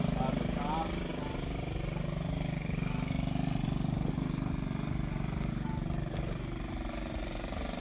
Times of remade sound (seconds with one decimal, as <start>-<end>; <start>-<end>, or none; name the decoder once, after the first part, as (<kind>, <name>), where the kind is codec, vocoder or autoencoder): none